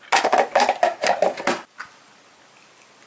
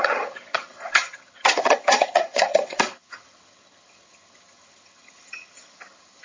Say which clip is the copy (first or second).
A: second